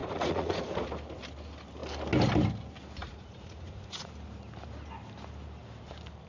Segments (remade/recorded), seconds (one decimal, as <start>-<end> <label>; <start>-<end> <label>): 0.0-0.9 remade; 0.9-3.0 recorded; 3.0-4.1 remade; 4.1-6.3 recorded